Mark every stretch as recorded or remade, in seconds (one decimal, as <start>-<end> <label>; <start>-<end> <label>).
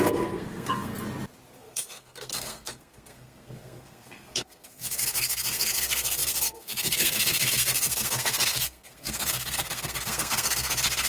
0.0-0.9 remade; 0.9-1.6 recorded; 1.6-11.1 remade